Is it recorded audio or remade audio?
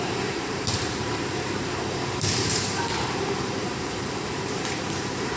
remade